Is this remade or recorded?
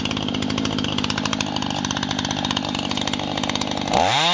recorded